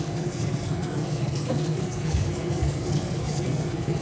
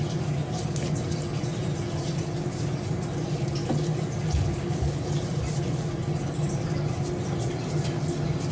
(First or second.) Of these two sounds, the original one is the second